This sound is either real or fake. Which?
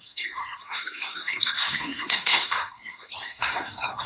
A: fake